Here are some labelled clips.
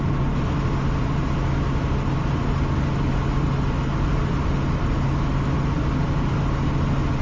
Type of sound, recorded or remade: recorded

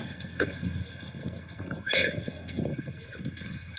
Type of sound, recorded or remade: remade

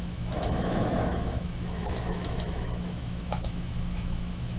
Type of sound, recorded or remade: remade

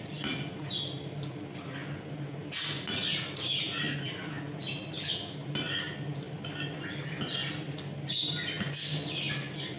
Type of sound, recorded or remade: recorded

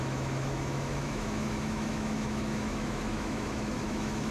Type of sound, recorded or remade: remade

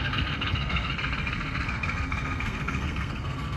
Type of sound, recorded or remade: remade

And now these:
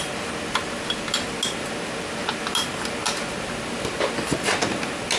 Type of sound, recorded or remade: recorded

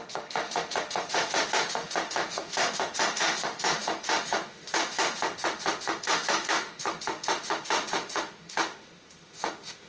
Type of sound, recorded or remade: remade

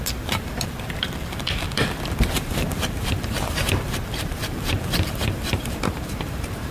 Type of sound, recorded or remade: remade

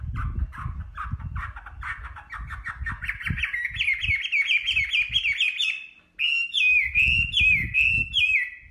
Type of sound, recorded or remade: recorded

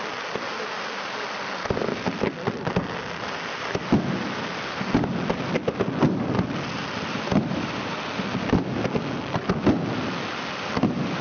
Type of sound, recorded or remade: recorded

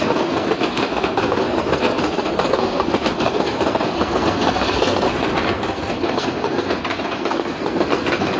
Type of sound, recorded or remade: remade